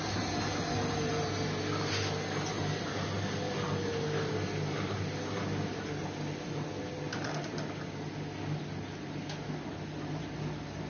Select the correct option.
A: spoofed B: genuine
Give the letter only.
B